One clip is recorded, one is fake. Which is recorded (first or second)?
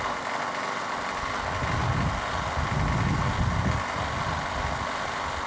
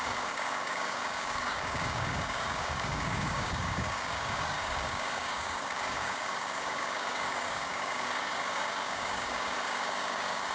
first